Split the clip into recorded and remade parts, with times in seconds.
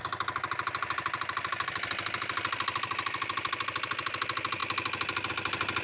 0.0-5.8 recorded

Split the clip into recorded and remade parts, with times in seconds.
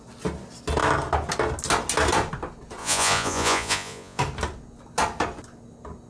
0.0-2.8 recorded; 2.8-4.2 remade; 4.2-6.1 recorded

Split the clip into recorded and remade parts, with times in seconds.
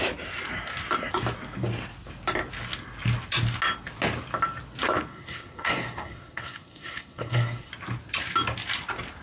0.0-5.1 recorded; 5.1-7.7 remade; 7.7-9.2 recorded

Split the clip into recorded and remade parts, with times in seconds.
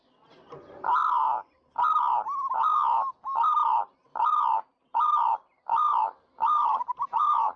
0.0-1.0 recorded; 1.0-1.8 remade; 1.8-7.6 recorded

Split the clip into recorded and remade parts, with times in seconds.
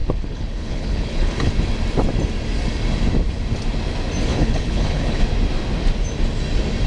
0.0-1.5 remade; 1.5-4.3 recorded; 4.3-5.2 remade; 5.2-6.9 recorded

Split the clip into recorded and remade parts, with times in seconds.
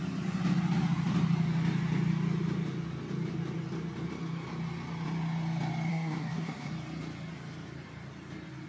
0.0-5.9 recorded; 5.9-6.7 remade; 6.7-8.7 recorded